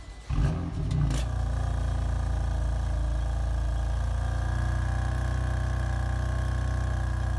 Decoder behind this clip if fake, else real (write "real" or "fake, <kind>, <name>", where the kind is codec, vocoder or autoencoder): real